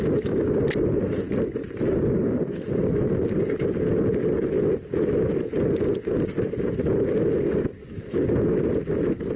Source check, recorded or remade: recorded